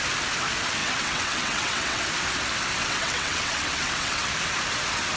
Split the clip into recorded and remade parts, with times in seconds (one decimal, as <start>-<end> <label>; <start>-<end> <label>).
0.0-0.8 recorded; 0.8-2.0 remade; 2.0-2.8 recorded; 2.8-4.3 remade; 4.3-5.2 recorded